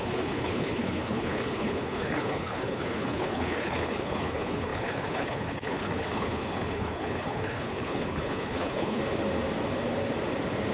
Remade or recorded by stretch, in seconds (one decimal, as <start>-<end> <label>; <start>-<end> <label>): 0.0-9.0 remade; 9.0-10.7 recorded